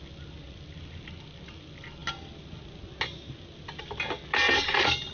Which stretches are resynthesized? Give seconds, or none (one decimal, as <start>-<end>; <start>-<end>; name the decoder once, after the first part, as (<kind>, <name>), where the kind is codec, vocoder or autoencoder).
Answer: none

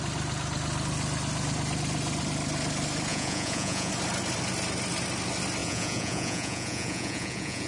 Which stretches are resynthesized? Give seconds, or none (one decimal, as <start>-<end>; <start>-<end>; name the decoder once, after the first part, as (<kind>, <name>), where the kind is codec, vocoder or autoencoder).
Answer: 3.1-3.9 (vocoder, Vocos); 5.6-7.7

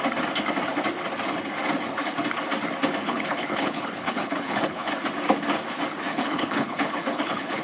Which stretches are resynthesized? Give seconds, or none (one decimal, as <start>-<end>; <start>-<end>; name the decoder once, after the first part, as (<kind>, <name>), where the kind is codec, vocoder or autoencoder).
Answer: 3.0-4.9 (codec, HILCodec); 6.1-7.6

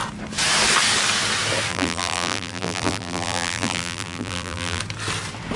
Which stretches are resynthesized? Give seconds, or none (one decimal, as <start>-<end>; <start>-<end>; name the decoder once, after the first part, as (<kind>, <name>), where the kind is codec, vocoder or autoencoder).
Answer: 1.7-4.8 (vocoder, BigVGAN v2)

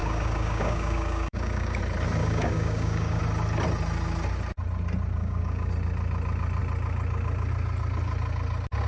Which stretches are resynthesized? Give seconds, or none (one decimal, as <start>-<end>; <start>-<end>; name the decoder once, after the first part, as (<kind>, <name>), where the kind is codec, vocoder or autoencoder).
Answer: 0.0-1.8 (codec, DAC); 2.2-3.2; 5.2-5.7

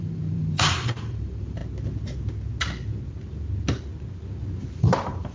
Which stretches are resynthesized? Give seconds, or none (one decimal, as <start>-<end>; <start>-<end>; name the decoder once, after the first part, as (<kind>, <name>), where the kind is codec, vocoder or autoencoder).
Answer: 0.0-1.6 (vocoder, BigVGAN v2); 4.8-5.3

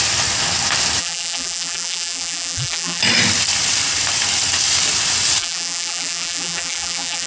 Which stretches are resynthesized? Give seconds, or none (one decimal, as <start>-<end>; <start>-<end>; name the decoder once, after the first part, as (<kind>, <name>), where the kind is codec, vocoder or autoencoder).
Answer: 1.0-3.0 (vocoder, BigVGAN v2); 5.4-7.3

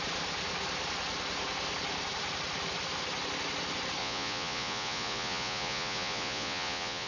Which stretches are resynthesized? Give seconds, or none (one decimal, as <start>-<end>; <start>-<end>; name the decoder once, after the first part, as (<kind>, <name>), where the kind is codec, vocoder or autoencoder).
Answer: 4.0-7.1 (vocoder, Vocos)